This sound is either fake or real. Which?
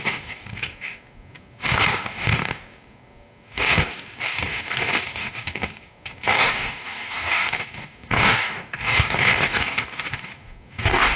fake